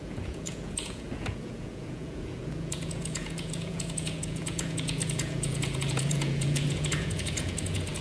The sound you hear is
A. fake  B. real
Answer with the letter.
A